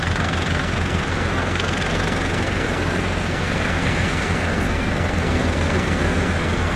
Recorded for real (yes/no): no